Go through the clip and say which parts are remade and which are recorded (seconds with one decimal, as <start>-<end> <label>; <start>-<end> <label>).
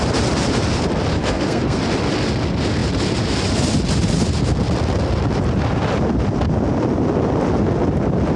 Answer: 0.0-1.1 recorded; 1.1-1.8 remade; 1.8-8.4 recorded